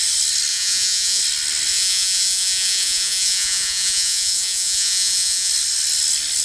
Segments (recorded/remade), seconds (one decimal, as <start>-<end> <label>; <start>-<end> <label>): 0.0-0.5 recorded; 0.5-1.2 remade; 1.2-1.7 recorded; 1.7-5.5 remade; 5.5-6.4 recorded